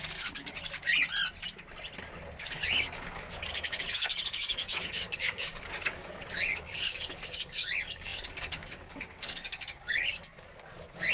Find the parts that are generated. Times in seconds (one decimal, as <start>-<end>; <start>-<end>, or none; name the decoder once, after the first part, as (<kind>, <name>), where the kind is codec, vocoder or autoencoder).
0.0-0.9 (codec, DAC); 2.4-11.1